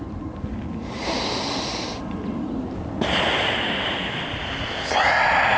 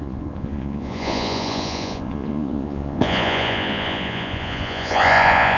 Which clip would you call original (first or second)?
first